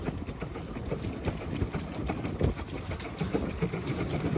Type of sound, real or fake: real